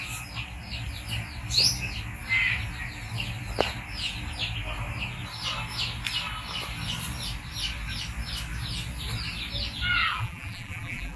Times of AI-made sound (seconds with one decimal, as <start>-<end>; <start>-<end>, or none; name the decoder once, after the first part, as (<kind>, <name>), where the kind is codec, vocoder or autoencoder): 10.0-11.2 (vocoder, BigVGAN v2)